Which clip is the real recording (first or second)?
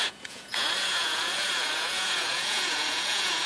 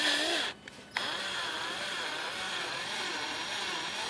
second